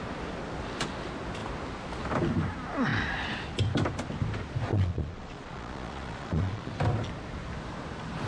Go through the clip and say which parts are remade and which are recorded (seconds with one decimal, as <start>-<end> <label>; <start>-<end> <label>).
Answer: 0.0-4.7 recorded; 4.7-6.7 remade; 6.7-8.3 recorded